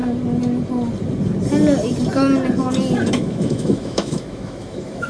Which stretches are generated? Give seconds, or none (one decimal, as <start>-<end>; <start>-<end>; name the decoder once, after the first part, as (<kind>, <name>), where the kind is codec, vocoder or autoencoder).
3.1-5.1 (autoencoder, DAC-VAE)